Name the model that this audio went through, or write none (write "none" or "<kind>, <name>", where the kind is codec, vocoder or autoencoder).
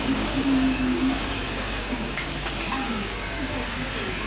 codec, DAC